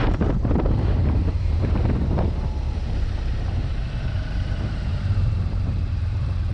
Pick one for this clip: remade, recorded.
remade